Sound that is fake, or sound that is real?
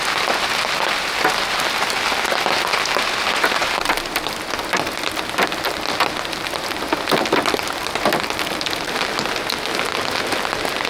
real